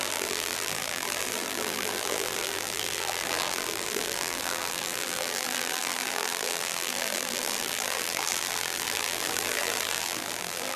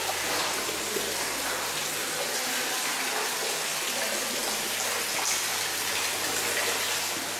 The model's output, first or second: first